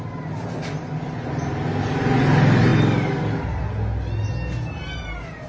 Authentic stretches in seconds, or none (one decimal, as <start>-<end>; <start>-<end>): 0.0-5.5